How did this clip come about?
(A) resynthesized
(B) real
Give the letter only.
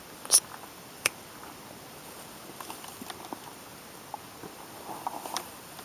A